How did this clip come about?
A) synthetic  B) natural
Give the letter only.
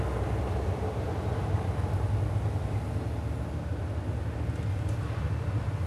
B